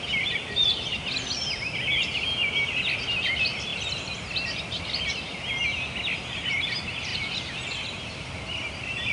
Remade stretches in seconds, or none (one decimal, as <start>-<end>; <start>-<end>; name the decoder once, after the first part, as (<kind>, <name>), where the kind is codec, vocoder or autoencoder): none